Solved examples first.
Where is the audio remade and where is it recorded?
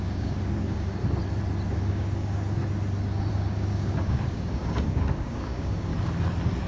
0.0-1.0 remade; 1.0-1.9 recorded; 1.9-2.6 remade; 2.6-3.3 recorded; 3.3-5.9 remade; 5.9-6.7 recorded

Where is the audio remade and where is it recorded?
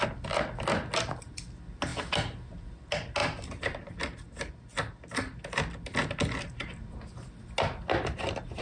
0.0-8.6 recorded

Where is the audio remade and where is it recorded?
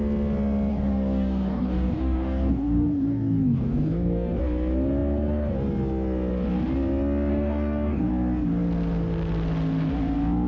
0.0-0.7 recorded; 0.7-4.4 remade; 4.4-7.3 recorded; 7.3-8.1 remade; 8.1-10.5 recorded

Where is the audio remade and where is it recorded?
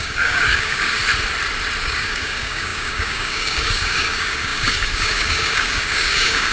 0.0-1.0 remade; 1.0-1.8 recorded; 1.8-6.5 remade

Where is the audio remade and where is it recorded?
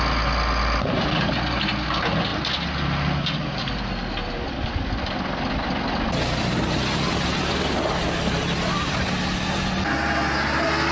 0.0-10.9 recorded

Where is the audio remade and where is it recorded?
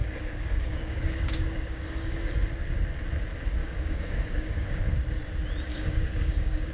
0.0-2.3 remade; 2.3-3.6 recorded; 3.6-4.8 remade; 4.8-5.7 recorded; 5.7-6.7 remade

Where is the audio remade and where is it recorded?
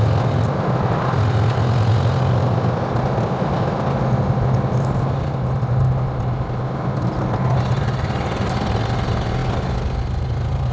0.0-10.7 recorded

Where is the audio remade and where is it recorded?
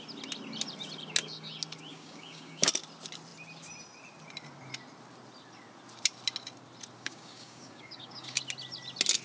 0.0-1.9 recorded; 1.9-2.7 remade; 2.7-7.0 recorded; 7.0-8.4 remade; 8.4-9.2 recorded